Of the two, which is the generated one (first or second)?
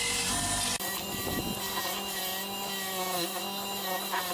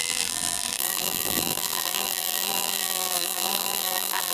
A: second